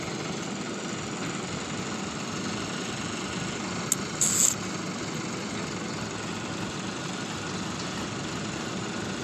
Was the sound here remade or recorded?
recorded